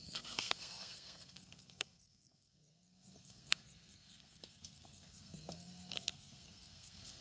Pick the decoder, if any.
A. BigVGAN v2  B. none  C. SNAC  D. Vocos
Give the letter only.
C